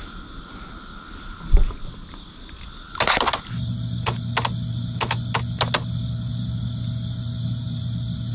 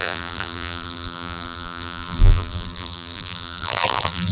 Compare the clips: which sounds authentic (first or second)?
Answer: first